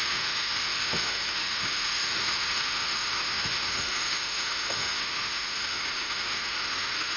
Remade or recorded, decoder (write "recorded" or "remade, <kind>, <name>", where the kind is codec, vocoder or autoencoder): remade, autoencoder, DAC-VAE